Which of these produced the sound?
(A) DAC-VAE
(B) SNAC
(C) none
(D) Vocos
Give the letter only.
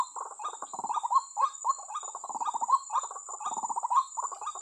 C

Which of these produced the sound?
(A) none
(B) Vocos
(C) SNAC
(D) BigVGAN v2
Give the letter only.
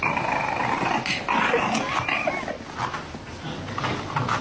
A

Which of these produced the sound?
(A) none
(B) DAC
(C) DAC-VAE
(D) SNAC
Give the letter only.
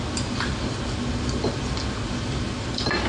A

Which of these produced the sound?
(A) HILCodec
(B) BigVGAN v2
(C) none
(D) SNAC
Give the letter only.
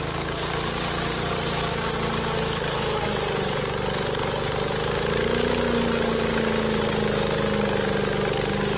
C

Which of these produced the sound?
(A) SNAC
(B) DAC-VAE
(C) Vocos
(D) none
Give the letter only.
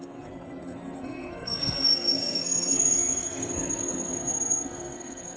A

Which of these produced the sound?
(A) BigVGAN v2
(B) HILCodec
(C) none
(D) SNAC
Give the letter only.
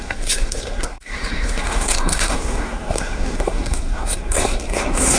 D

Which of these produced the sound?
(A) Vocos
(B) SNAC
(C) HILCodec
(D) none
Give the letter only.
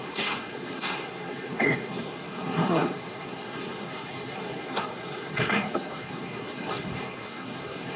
B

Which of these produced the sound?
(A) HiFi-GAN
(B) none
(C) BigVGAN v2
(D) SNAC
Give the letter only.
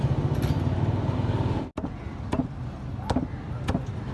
B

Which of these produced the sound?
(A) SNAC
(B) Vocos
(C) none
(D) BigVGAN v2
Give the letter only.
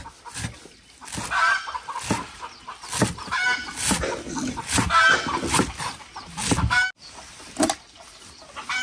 C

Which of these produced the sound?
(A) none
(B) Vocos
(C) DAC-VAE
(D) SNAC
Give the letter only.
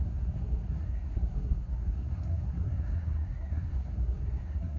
D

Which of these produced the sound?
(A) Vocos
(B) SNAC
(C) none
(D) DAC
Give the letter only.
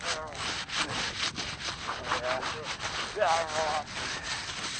C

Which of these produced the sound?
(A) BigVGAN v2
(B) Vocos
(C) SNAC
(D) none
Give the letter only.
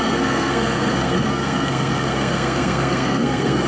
C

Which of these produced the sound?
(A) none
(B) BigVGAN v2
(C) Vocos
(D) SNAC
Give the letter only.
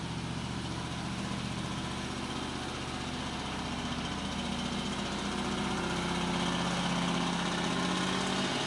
A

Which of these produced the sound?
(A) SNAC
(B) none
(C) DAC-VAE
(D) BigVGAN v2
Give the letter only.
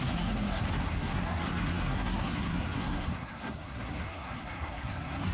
A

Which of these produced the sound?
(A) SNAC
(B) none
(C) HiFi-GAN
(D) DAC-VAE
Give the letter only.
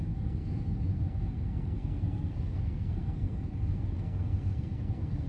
A